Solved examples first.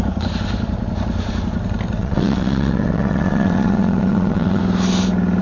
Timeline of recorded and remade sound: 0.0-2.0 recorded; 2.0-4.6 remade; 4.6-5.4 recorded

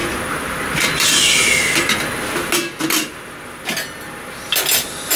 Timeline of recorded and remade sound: 0.0-5.2 recorded

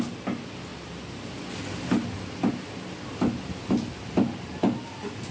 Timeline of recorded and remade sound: 0.0-5.3 recorded

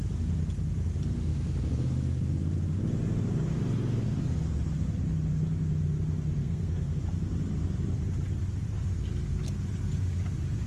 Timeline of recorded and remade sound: 0.0-6.4 recorded; 6.4-7.0 remade; 7.0-10.7 recorded

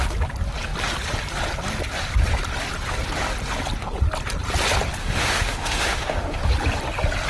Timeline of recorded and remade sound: 0.0-5.0 recorded; 5.0-6.4 remade; 6.4-7.3 recorded

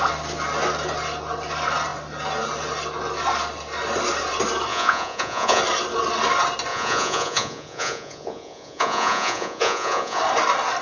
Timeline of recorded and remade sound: 0.0-4.7 recorded; 4.7-5.6 remade; 5.6-6.7 recorded; 6.7-10.2 remade; 10.2-10.8 recorded